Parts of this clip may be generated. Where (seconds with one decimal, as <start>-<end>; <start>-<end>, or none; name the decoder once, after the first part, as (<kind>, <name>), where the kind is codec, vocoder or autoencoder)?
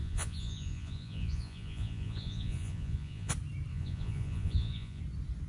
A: 0.0-3.3 (vocoder, Vocos); 3.7-5.0